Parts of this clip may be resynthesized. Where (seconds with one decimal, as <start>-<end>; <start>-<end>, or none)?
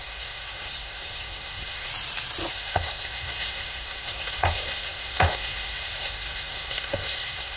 0.0-1.9; 2.5-7.6